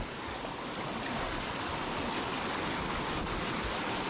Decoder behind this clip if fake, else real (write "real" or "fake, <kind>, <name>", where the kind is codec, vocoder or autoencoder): real